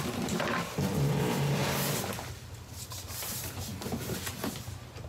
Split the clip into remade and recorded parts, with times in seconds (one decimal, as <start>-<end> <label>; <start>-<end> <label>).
0.0-1.6 remade; 1.6-2.7 recorded; 2.7-3.7 remade; 3.7-5.1 recorded